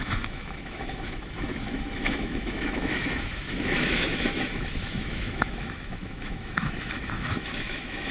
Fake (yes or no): yes